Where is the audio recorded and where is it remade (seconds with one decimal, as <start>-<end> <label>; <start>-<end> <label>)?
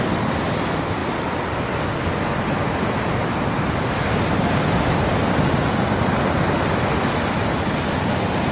0.0-8.5 recorded